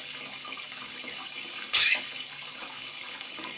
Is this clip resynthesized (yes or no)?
yes